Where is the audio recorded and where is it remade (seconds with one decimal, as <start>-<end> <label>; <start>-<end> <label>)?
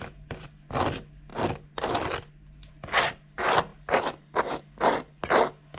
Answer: 0.0-5.8 recorded